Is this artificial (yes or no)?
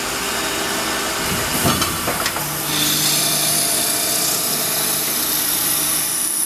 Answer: no